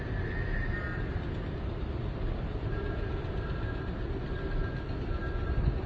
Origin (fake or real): real